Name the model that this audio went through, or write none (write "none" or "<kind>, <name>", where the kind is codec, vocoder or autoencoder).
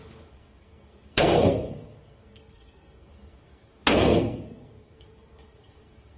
codec, SNAC